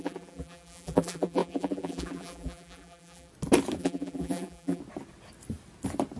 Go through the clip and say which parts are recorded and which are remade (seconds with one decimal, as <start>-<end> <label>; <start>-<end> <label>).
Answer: 0.0-3.3 remade; 3.3-3.8 recorded; 3.8-4.8 remade; 4.8-6.2 recorded